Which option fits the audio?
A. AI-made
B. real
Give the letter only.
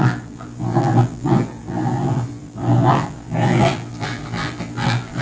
A